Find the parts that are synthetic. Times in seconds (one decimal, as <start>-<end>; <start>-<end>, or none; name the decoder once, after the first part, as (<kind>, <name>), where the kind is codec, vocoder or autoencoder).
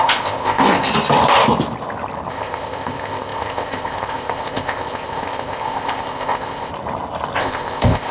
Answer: 0.0-0.9 (codec, ZipCodec); 2.3-6.7; 7.4-8.1